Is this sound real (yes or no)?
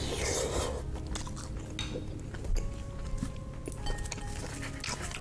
yes